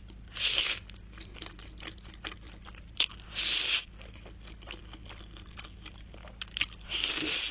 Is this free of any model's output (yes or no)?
yes